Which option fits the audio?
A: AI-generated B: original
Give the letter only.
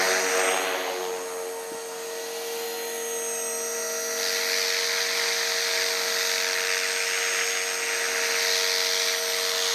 B